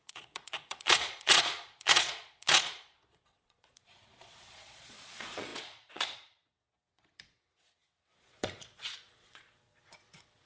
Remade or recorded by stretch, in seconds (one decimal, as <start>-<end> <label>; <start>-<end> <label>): 0.0-10.5 remade